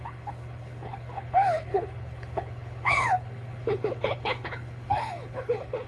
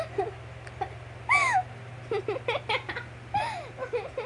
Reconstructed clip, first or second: first